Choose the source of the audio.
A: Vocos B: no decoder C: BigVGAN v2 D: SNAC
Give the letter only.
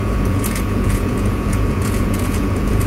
A